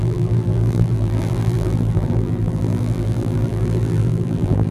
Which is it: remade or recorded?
remade